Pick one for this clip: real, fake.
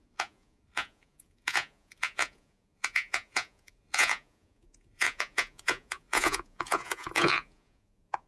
fake